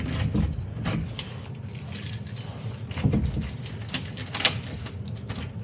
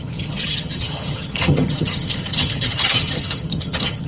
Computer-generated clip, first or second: second